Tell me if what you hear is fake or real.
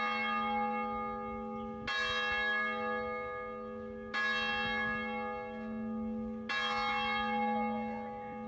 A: real